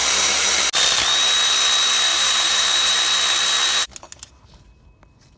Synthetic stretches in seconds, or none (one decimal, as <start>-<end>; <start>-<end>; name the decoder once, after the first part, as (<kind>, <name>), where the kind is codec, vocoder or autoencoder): 0.0-0.6 (vocoder, BigVGAN v2); 2.1-2.9